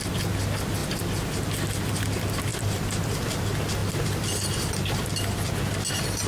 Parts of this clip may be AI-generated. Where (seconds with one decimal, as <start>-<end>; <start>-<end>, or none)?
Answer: 2.5-3.4; 3.8-5.1